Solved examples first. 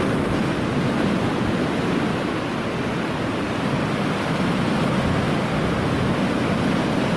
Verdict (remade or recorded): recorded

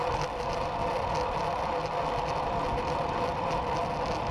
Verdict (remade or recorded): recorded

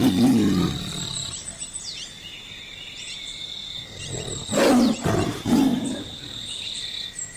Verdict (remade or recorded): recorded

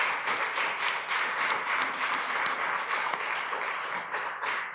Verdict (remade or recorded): recorded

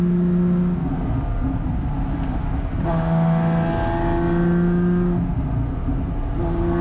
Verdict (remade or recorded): recorded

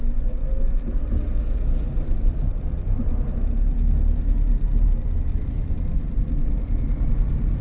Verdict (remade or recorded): recorded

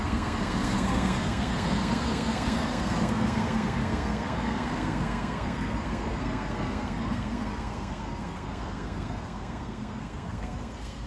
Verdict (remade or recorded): remade